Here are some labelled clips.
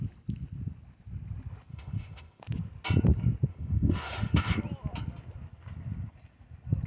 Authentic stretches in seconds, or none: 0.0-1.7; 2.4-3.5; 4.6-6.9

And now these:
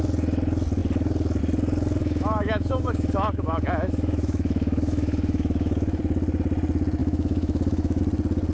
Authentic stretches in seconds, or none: 0.0-2.0; 6.0-7.0; 8.0-8.5

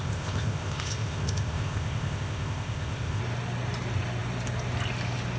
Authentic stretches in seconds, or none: 3.2-5.4